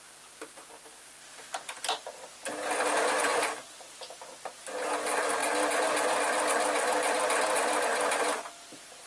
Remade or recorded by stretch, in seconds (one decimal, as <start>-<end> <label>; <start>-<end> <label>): 0.0-9.1 recorded